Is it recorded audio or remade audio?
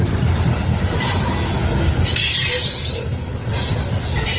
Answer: recorded